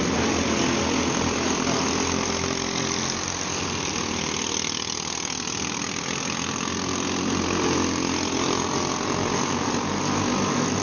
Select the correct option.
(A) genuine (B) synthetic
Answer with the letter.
A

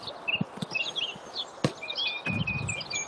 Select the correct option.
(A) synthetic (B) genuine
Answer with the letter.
B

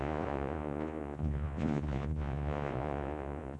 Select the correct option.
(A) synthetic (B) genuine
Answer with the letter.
A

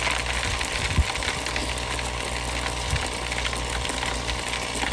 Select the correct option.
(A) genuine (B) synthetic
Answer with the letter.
A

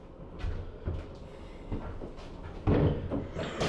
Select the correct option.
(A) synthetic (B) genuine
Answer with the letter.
B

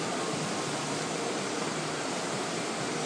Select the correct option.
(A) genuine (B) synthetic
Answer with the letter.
A